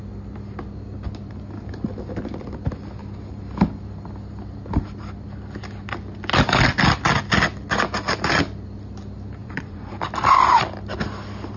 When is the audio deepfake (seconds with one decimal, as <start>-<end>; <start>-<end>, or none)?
9.4-9.9